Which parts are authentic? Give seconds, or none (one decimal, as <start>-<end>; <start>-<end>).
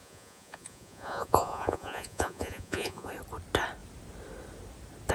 3.1-5.1